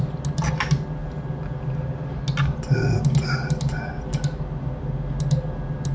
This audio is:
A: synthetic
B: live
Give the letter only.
B